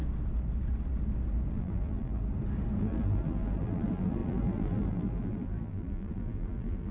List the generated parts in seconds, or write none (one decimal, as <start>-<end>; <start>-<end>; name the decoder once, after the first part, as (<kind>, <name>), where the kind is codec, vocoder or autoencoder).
1.5-2.2 (vocoder, BigVGAN v2); 2.8-6.9